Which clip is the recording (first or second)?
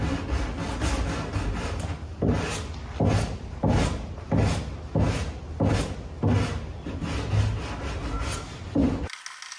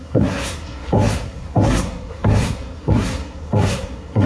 first